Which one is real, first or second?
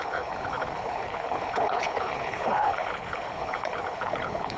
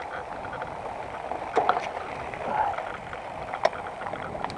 second